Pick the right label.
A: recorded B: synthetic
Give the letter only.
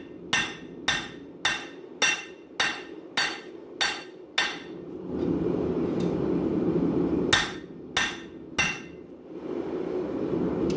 A